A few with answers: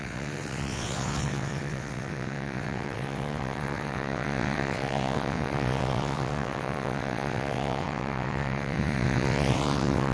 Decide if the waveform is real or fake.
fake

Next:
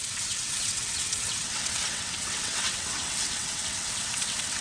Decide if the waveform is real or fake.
fake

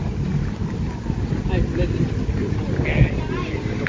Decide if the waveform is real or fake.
real